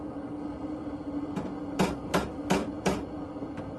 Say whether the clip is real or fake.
real